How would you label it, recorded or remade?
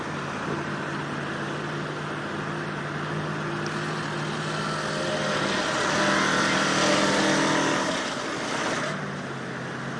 recorded